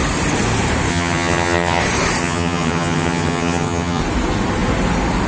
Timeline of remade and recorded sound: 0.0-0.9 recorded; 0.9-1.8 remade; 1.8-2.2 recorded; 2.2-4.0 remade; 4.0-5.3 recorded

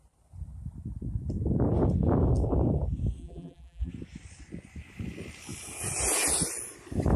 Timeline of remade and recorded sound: 0.0-3.2 recorded; 3.2-3.9 remade; 3.9-7.2 recorded

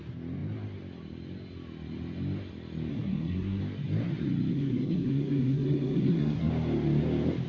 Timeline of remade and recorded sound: 0.0-2.9 recorded; 2.9-3.6 remade; 3.6-4.5 recorded; 4.5-6.5 remade; 6.5-7.5 recorded